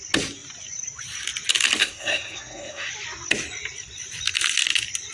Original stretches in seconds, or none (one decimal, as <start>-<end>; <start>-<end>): 0.0-1.8; 2.9-5.1